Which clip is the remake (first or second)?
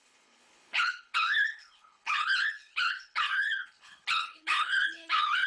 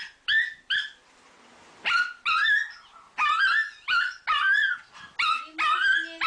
first